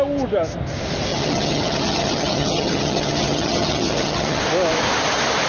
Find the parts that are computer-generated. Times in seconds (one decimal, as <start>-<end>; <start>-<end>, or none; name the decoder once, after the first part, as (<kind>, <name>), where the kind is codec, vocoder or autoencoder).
1.1-4.4 (vocoder, HiFi-GAN)